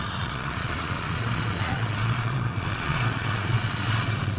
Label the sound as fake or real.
fake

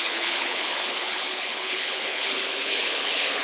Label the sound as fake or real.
fake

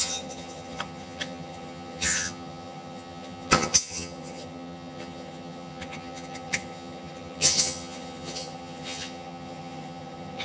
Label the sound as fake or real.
fake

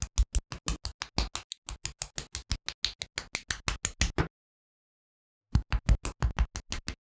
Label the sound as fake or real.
real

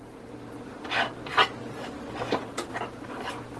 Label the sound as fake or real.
real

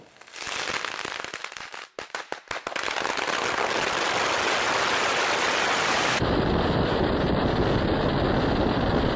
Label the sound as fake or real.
real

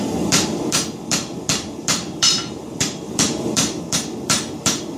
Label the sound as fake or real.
fake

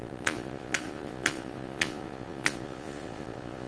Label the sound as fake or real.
fake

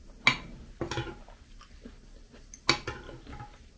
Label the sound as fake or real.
real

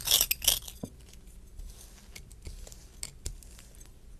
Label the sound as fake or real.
real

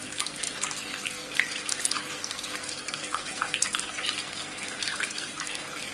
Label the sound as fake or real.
fake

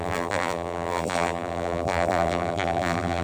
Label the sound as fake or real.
fake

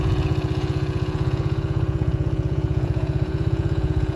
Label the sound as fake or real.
fake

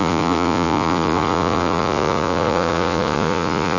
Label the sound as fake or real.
fake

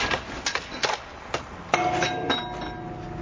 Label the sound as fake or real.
real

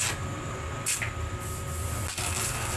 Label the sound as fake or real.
real